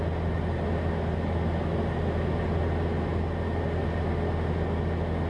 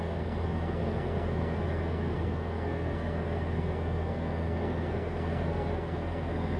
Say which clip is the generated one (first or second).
second